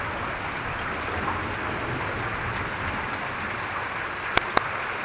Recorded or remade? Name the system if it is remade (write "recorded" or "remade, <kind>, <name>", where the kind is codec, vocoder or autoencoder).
recorded